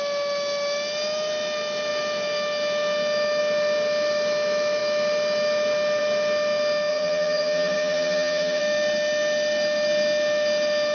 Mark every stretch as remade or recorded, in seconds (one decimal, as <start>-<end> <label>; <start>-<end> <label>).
0.0-6.9 recorded; 6.9-8.6 remade; 8.6-10.9 recorded